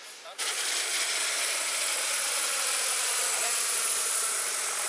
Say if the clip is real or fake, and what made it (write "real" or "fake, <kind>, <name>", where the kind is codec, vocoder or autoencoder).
fake, vocoder, BigVGAN v2